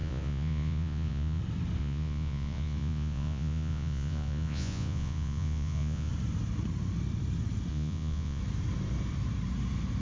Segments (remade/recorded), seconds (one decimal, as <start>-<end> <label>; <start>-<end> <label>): 0.0-1.4 remade; 1.4-1.8 recorded; 1.8-6.1 remade; 6.1-7.7 recorded; 7.7-8.4 remade; 8.4-10.0 recorded